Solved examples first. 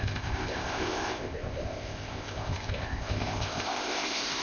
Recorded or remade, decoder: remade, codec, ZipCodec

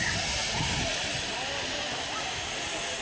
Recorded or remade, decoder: recorded